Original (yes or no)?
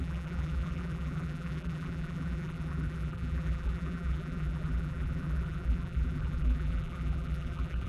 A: no